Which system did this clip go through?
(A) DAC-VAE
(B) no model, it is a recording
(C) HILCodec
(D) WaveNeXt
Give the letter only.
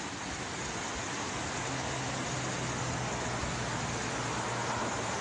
B